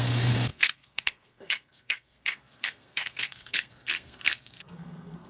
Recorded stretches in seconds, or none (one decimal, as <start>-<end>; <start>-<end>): none